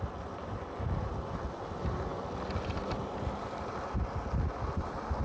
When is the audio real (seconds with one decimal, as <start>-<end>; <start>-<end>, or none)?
0.0-5.2